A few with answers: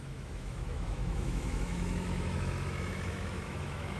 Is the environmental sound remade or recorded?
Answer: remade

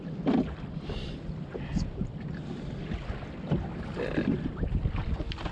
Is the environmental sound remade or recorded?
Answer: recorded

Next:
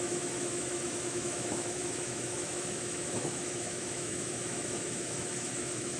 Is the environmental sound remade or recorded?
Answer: remade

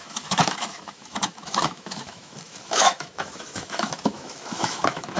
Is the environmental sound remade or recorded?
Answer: remade